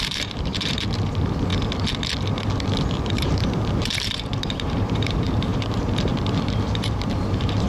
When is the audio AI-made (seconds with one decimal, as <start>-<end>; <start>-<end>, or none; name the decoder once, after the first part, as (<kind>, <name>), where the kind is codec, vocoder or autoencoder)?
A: 0.0-1.5 (vocoder, BigVGAN v2); 2.8-7.7